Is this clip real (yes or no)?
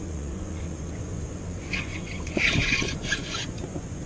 no